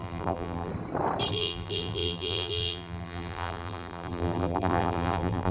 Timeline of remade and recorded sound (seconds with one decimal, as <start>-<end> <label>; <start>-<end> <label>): 0.0-0.7 remade; 0.7-1.3 recorded; 1.3-5.5 remade